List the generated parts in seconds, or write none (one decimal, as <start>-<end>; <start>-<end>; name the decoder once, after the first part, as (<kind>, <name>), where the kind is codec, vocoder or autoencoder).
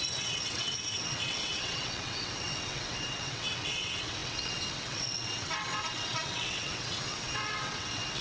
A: 0.0-8.2 (vocoder, WaveNeXt)